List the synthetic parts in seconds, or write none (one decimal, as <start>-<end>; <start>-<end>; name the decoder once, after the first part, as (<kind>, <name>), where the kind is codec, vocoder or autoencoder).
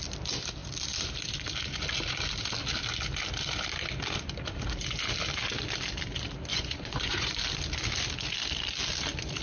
6.5-7.3 (vocoder, Vocos)